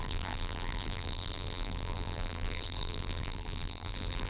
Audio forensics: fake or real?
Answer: fake